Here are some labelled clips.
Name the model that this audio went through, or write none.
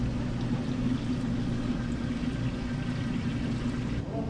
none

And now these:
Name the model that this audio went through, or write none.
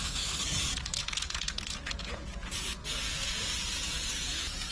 vocoder, Vocos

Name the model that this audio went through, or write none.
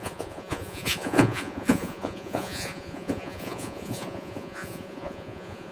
vocoder, Vocos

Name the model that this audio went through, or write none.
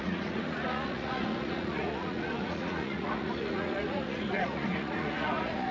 vocoder, Vocos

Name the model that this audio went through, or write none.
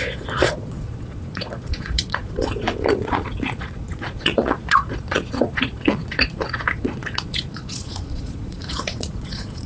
vocoder, Vocos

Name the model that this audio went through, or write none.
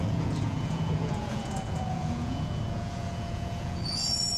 vocoder, Vocos